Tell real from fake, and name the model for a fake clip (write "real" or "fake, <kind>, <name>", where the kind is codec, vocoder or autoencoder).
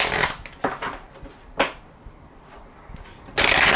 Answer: real